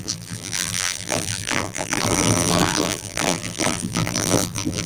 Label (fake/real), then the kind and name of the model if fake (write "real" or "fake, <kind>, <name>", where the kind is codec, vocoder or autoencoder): fake, vocoder, BigVGAN v2